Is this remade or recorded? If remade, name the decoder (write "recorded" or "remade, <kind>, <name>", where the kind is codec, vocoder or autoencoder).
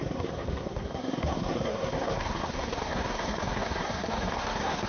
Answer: remade, codec, SNAC